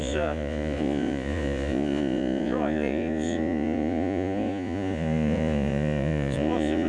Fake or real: fake